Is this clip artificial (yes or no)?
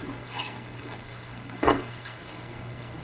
yes